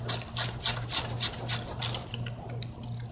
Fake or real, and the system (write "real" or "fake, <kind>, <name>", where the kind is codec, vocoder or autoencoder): fake, vocoder, BigVGAN v2